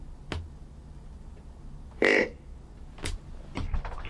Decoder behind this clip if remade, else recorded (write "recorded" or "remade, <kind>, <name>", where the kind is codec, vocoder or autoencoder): recorded